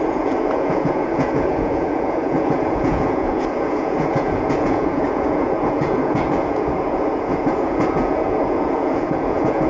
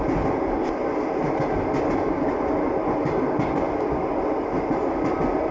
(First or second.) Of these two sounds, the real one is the second